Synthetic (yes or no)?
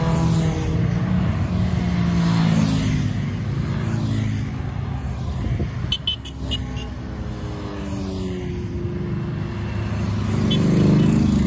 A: no